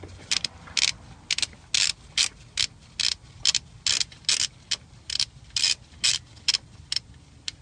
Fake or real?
real